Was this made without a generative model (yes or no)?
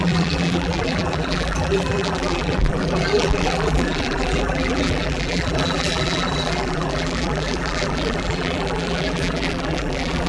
no